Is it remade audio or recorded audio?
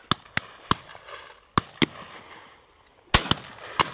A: recorded